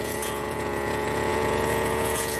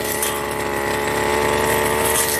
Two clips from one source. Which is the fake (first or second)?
first